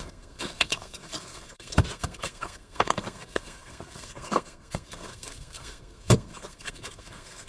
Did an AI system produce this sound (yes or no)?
yes